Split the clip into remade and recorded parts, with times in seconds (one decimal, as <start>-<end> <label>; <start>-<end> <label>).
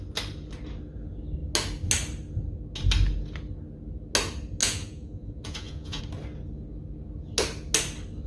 0.0-4.6 recorded; 4.6-6.0 remade; 6.0-8.3 recorded